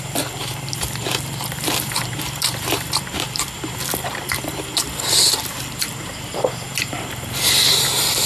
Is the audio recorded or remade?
remade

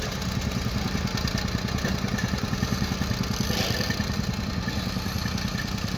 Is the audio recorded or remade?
recorded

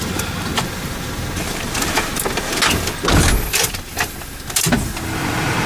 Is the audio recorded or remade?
recorded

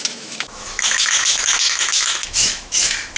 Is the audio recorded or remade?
remade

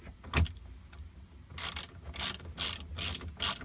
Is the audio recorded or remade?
recorded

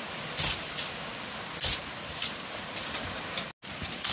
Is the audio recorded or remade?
recorded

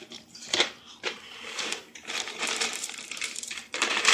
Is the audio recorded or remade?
remade